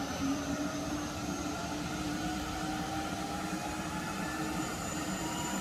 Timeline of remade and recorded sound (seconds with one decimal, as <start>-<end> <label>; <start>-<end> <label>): 0.0-5.6 remade